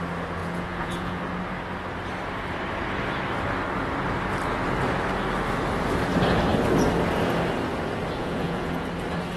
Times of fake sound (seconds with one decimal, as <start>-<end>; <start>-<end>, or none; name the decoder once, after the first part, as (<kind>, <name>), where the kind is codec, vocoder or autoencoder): 0.4-1.2 (vocoder, Vocos); 8.2-8.9